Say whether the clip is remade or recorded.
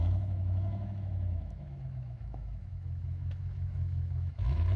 remade